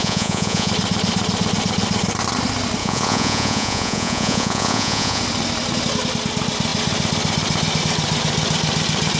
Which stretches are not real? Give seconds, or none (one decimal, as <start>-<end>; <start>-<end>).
0.0-0.7; 2.8-5.2